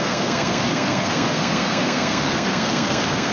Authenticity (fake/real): fake